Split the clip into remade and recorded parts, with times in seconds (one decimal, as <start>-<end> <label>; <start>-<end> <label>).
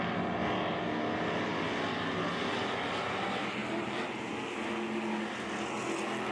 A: 0.0-6.3 recorded